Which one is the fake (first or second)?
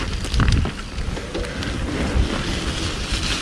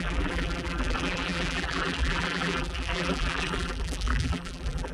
second